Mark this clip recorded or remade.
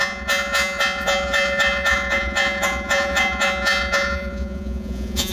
remade